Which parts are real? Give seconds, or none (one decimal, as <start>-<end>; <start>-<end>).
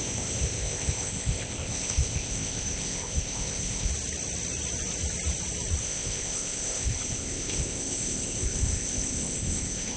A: 3.9-5.8